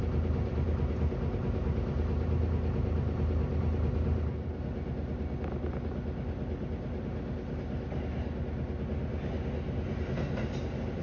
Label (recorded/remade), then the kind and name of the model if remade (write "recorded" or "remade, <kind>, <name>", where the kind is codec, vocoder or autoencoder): recorded